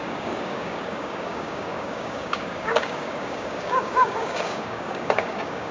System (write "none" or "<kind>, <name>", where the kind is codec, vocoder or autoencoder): codec, DAC